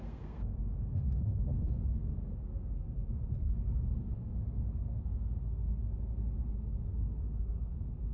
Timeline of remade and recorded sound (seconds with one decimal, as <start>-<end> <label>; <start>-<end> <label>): 0.0-8.1 remade